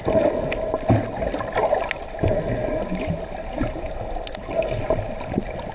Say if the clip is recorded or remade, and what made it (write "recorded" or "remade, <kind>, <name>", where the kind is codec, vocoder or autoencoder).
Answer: recorded